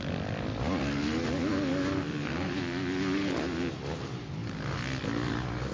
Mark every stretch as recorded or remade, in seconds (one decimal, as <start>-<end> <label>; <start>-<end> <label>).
0.0-5.7 recorded